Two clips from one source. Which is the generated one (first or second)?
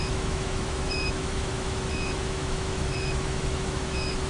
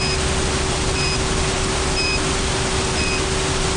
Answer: first